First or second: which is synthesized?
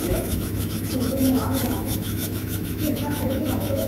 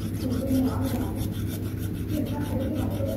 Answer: first